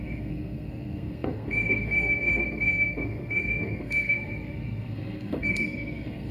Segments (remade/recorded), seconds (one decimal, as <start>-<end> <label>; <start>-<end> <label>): 0.0-6.3 remade